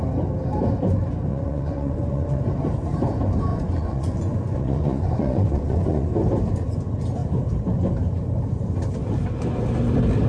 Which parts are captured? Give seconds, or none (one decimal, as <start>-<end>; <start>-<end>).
0.0-1.3; 2.4-3.5; 6.1-10.3

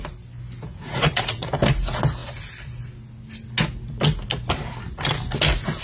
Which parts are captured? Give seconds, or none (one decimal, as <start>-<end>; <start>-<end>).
0.0-0.7; 1.5-5.8

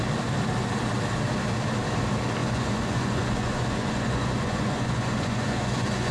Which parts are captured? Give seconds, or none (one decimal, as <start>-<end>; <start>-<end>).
0.0-2.4

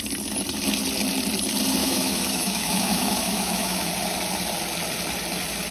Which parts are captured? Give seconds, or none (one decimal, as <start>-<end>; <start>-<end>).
0.0-1.8; 3.9-5.7